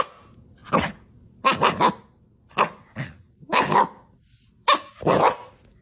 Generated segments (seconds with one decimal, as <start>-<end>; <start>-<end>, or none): none